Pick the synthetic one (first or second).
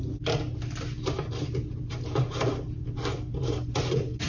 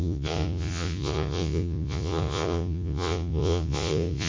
second